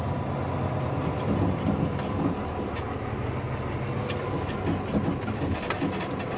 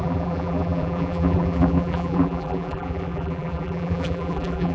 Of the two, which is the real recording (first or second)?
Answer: first